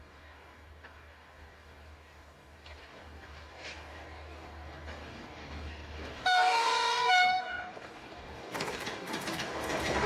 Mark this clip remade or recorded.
remade